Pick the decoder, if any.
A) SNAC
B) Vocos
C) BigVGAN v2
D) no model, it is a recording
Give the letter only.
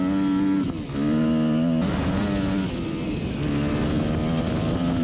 D